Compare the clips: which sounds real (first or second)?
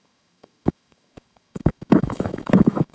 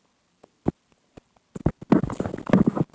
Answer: second